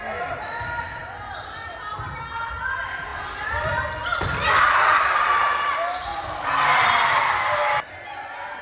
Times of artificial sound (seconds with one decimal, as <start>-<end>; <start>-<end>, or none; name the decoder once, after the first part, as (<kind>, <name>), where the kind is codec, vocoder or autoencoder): 3.1-5.6 (vocoder, BigVGAN v2); 6.1-7.4